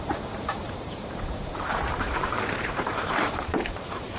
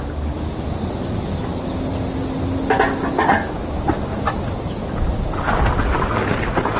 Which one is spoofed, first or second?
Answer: first